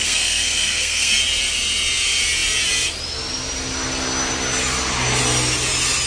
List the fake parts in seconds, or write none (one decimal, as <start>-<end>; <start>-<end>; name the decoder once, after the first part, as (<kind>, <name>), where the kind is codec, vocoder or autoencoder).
0.0-1.1 (codec, SNAC)